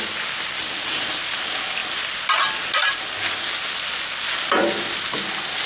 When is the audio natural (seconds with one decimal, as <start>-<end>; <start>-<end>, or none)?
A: 0.0-5.7